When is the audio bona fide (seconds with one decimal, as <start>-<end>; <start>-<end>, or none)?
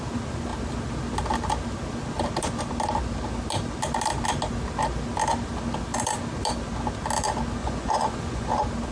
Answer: 0.0-7.6; 8.5-8.9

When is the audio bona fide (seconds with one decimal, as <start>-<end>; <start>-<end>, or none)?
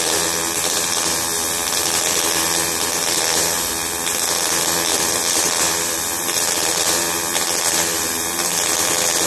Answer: 0.0-4.9; 7.8-9.3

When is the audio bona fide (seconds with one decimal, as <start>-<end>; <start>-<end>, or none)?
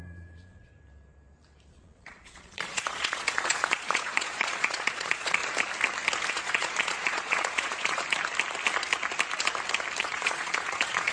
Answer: 0.7-1.7; 5.4-6.3; 8.0-10.0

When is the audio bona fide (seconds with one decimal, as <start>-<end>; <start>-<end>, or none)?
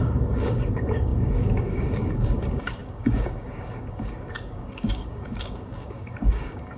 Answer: none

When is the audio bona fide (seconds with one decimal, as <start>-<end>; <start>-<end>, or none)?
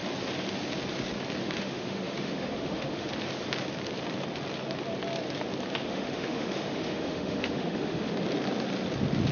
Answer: 0.0-1.4; 3.1-5.8; 8.1-9.3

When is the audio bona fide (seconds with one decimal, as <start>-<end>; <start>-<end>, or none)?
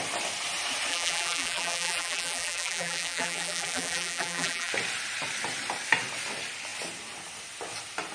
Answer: 0.0-0.9; 4.7-8.1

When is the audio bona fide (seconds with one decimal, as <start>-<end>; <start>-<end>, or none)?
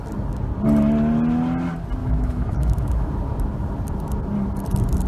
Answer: 0.0-2.0; 3.1-5.1